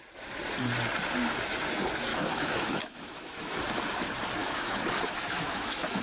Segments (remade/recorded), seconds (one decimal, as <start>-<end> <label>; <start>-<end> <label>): 0.0-2.1 recorded; 2.1-3.6 remade; 3.6-4.4 recorded; 4.4-6.0 remade